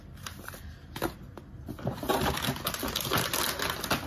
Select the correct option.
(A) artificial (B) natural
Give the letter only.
B